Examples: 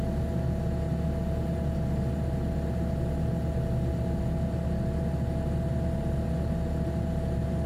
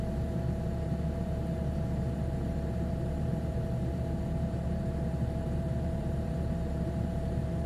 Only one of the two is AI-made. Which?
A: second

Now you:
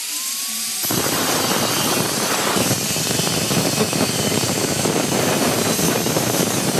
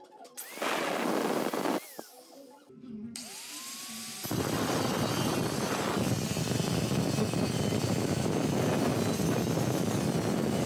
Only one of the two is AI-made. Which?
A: first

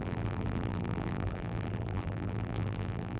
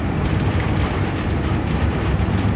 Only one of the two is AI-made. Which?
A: first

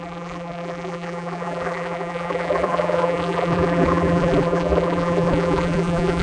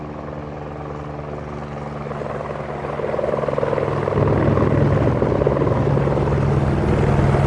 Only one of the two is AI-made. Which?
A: first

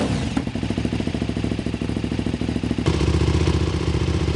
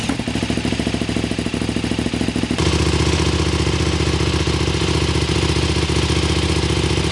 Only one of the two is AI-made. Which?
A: first